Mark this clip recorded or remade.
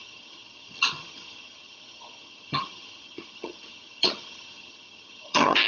remade